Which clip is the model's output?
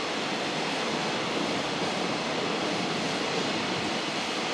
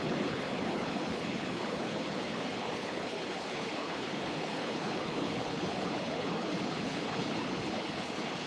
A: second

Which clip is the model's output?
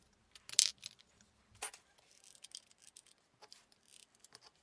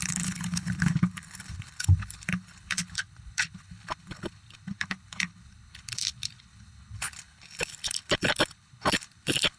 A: second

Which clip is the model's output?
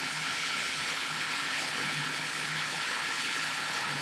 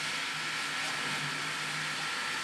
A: first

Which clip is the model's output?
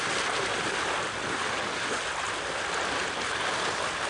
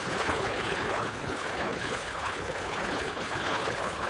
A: second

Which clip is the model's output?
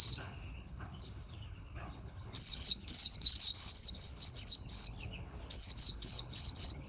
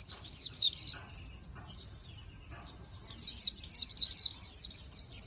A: first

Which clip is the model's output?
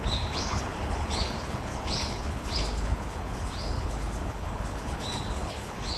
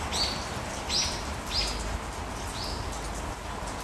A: first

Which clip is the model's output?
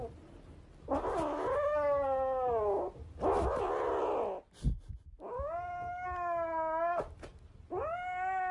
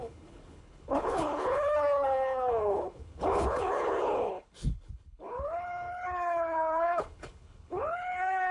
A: second